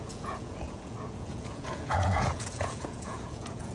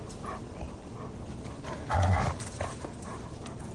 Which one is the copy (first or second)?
first